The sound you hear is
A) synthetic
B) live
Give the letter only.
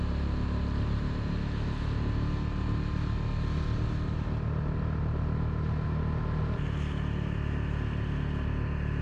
B